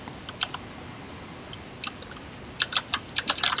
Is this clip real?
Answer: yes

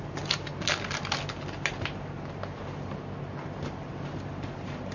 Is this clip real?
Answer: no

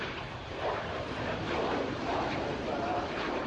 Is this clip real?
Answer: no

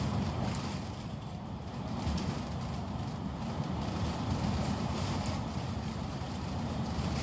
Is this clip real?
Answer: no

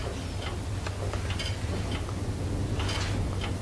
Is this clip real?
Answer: yes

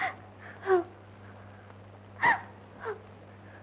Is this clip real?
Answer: yes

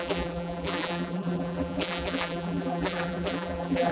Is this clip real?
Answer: no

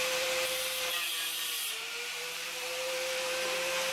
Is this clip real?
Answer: no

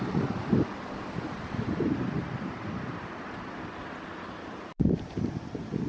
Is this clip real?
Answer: no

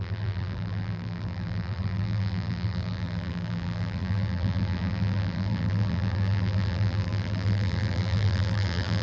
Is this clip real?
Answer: no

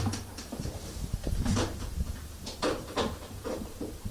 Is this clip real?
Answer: no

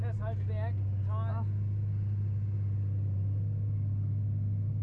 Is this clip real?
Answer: yes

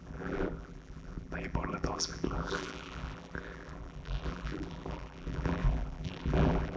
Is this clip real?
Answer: no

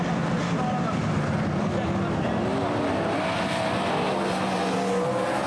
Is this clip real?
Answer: yes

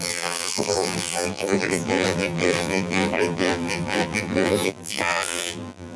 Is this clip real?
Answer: no